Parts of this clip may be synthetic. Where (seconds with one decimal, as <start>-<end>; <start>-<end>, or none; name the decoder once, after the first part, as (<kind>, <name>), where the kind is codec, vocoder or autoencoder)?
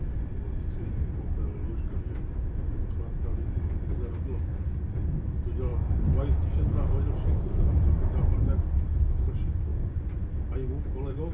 9.7-10.3 (vocoder, Vocos)